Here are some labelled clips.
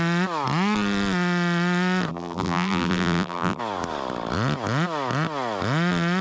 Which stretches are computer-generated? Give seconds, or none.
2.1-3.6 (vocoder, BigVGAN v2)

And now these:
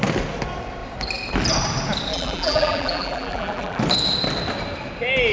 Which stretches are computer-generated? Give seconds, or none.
2.1-3.8 (vocoder, BigVGAN v2)

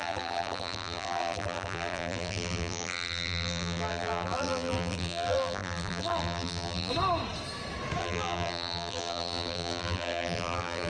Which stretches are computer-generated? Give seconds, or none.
0.0-6.9 (vocoder, BigVGAN v2); 8.0-10.9

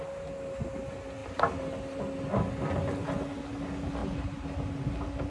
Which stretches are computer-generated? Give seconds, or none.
4.0-5.3 (vocoder, BigVGAN v2)